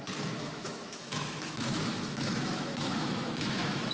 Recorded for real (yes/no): no